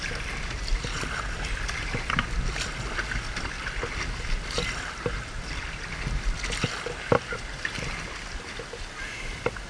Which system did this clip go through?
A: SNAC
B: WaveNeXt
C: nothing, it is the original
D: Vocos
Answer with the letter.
C